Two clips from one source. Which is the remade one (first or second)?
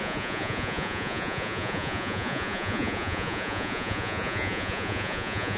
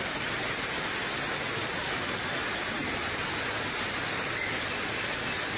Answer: first